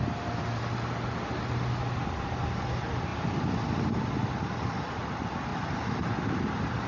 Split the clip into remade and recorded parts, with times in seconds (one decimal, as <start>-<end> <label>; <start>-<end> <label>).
0.0-6.9 recorded

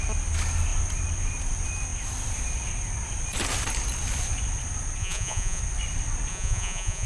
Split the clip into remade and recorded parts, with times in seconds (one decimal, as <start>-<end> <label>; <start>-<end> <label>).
0.0-5.0 recorded; 5.0-5.6 remade; 5.6-6.3 recorded; 6.3-7.1 remade

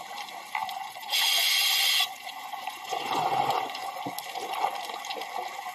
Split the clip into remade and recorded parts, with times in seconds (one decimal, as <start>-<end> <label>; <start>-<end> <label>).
0.0-0.6 recorded; 0.6-4.0 remade; 4.0-5.7 recorded

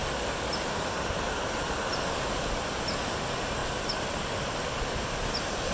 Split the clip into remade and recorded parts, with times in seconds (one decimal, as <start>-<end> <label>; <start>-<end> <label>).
0.0-5.7 recorded

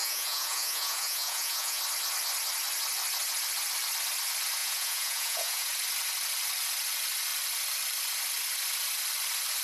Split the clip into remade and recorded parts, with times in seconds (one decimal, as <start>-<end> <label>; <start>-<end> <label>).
0.0-1.8 remade; 1.8-4.6 recorded; 4.6-5.7 remade; 5.7-9.6 recorded

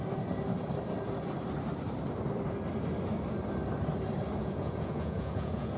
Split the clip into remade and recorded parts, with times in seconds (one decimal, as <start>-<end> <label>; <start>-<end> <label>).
0.0-4.4 recorded; 4.4-5.8 remade

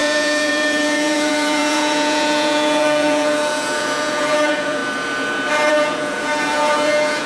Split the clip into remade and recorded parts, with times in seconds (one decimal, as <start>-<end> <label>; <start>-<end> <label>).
0.0-4.8 remade; 4.8-5.7 recorded; 5.7-7.3 remade

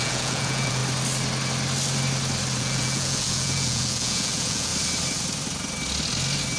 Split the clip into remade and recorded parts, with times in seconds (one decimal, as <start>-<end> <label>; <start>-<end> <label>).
0.0-0.8 remade; 0.8-2.6 recorded; 2.6-4.7 remade; 4.7-6.6 recorded